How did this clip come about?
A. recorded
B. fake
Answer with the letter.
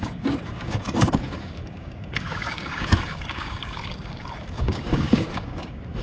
B